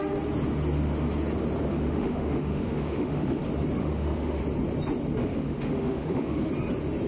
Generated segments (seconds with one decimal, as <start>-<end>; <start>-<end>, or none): 1.7-3.4; 3.8-4.4; 5.2-6.5